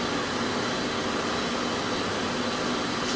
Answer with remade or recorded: recorded